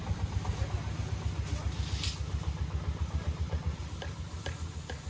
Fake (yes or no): no